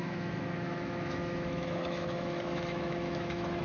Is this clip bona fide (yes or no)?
no